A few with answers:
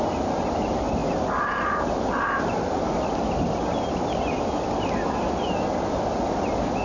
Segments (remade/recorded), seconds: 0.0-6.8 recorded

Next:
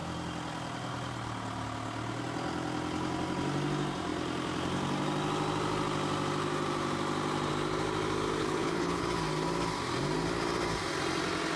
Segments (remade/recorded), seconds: 0.0-8.4 recorded; 8.4-9.0 remade; 9.0-11.6 recorded

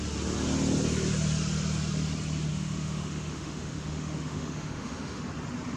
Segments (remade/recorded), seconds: 0.0-2.5 recorded; 2.5-5.2 remade; 5.2-5.8 recorded